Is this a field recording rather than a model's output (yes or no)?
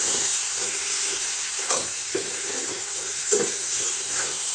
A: no